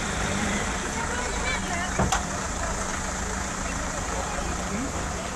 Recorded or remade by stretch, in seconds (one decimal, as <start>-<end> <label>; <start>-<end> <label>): 0.0-1.6 remade; 1.6-2.1 recorded; 2.1-2.9 remade; 2.9-3.5 recorded; 3.5-5.4 remade